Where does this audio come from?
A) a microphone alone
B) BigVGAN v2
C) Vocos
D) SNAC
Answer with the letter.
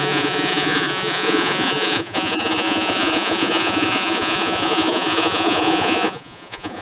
C